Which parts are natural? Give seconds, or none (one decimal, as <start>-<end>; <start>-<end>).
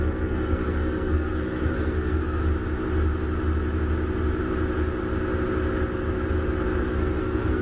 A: 2.4-6.8